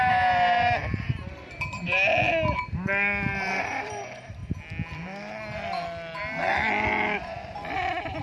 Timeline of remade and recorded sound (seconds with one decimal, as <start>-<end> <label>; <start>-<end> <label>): 0.0-2.1 remade; 2.1-3.6 recorded; 3.6-4.4 remade; 4.4-8.2 recorded